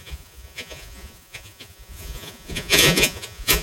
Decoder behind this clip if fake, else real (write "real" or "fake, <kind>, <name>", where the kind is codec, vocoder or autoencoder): fake, vocoder, Vocos